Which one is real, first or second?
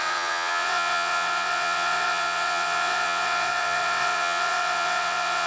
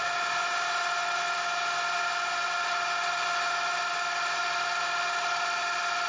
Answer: second